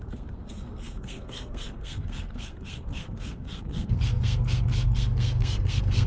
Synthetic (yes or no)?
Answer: yes